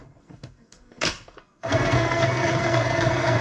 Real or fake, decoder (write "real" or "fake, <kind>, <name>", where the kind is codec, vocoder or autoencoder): fake, codec, SNAC